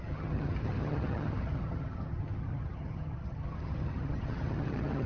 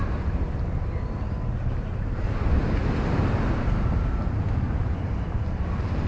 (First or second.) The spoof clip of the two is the first